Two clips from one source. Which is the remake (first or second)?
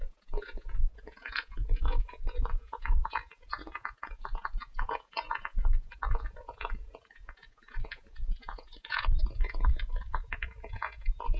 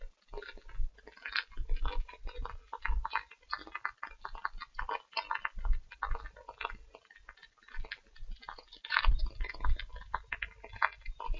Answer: first